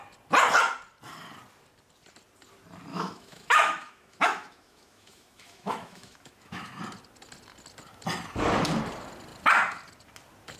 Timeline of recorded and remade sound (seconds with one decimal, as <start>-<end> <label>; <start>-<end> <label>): 0.0-2.9 recorded; 2.9-6.8 remade; 6.8-10.6 recorded